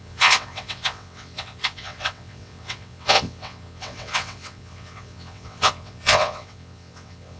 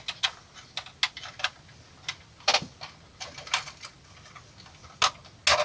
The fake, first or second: first